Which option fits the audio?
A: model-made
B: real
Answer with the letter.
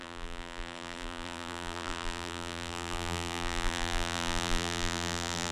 A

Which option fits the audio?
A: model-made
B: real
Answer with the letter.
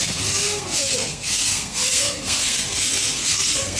A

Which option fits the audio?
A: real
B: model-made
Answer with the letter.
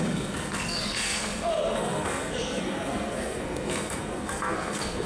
B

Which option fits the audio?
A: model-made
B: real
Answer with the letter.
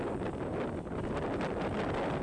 B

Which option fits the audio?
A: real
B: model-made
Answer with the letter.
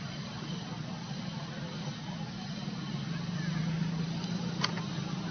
A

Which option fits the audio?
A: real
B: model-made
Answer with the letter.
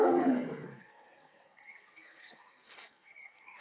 B